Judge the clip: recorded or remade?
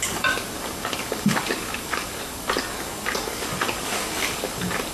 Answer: remade